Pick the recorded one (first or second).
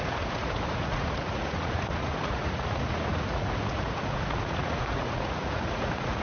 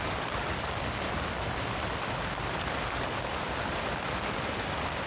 second